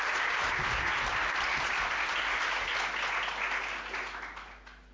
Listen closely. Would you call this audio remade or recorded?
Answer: recorded